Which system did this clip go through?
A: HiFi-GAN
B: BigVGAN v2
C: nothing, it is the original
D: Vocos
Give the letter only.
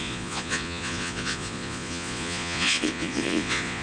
D